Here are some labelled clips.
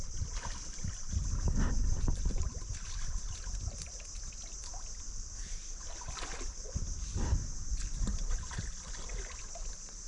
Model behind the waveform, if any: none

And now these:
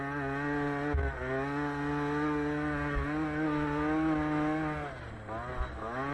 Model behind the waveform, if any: none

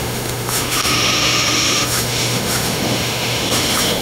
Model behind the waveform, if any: autoencoder, DAC-VAE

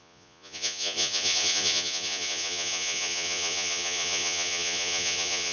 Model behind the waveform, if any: vocoder, Vocos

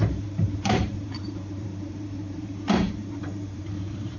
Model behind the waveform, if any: vocoder, BigVGAN v2